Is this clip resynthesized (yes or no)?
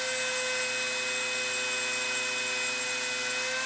no